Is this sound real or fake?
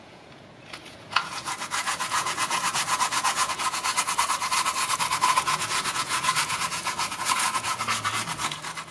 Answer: fake